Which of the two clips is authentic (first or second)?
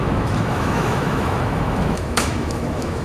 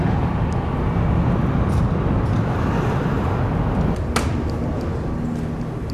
second